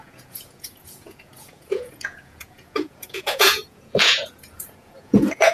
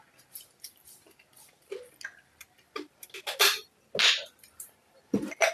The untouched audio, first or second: second